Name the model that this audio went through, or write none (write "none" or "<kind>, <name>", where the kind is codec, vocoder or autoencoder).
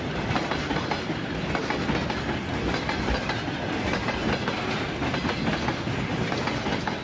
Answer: none